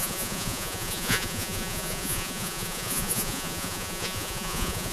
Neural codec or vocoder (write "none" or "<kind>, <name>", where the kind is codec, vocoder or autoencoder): vocoder, Vocos